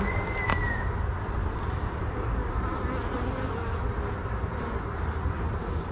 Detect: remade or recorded recorded